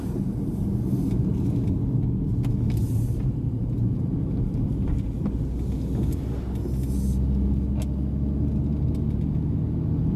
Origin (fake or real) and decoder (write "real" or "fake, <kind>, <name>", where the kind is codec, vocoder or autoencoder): real